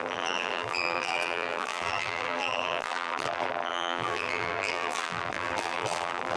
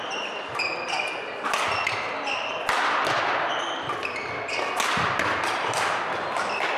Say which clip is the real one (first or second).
second